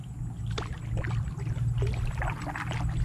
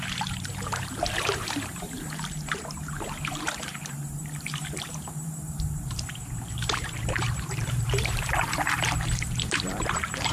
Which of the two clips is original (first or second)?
first